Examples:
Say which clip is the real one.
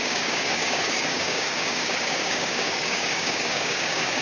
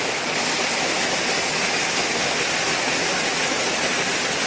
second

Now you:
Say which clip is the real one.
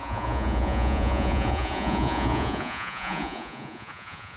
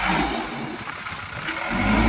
second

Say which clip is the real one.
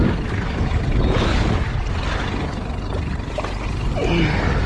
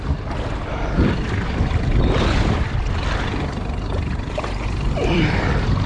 first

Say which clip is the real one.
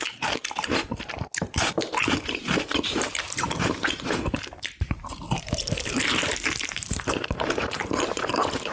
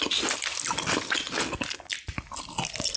second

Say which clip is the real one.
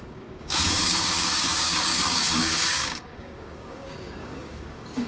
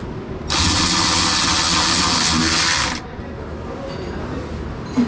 second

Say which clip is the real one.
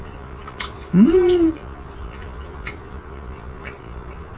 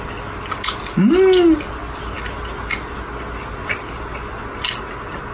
second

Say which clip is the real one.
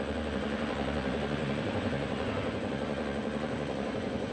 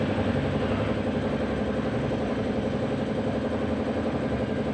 second